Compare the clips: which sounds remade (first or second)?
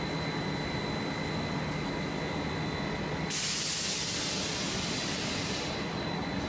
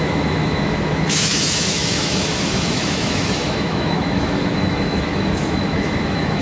second